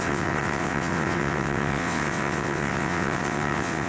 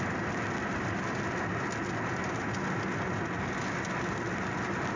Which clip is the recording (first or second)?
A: second